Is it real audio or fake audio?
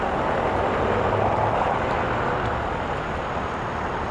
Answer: real